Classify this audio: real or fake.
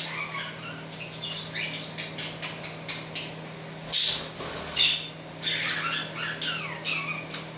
real